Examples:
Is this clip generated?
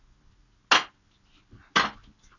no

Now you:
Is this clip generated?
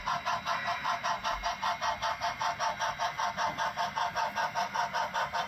no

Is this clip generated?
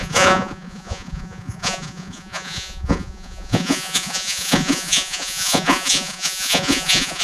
yes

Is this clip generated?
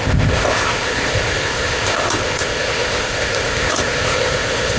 yes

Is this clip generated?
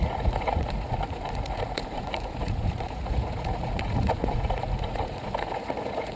yes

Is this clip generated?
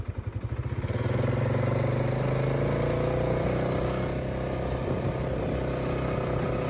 no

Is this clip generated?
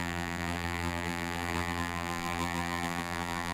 yes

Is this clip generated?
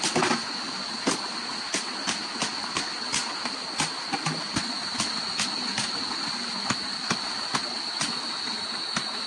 no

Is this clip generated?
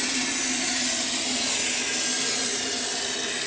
no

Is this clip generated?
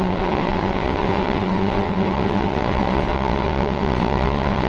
yes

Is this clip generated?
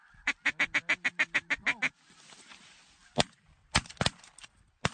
no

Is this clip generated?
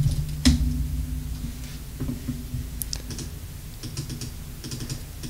no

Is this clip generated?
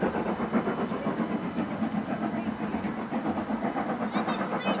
no